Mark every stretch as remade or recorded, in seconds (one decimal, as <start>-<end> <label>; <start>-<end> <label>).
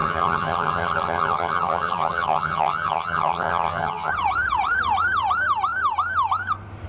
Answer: 0.0-4.1 remade; 4.1-6.9 recorded